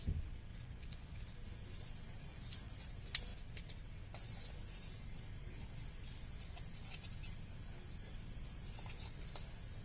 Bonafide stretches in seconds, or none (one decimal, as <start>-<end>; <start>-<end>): 0.0-0.5; 1.2-2.3; 2.9-9.8